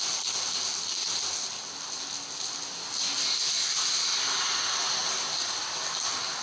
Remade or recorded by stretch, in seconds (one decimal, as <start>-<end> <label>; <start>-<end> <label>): 0.0-6.4 recorded